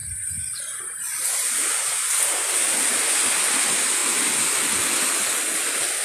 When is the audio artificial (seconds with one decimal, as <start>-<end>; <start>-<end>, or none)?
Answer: 3.6-6.0